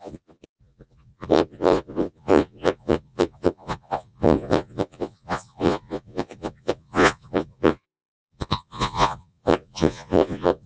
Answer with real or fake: fake